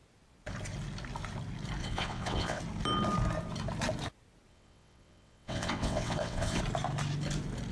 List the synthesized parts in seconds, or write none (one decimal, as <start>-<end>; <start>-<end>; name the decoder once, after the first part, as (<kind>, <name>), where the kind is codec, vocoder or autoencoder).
1.8-2.6 (vocoder, WaveNeXt); 4.5-6.6